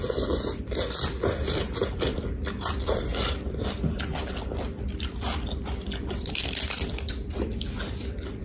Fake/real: fake